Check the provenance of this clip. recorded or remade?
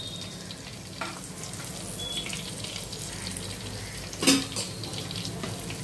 recorded